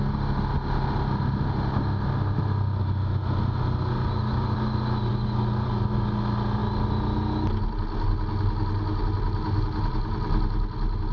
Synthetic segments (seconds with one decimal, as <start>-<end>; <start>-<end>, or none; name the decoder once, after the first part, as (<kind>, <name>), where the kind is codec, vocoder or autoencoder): none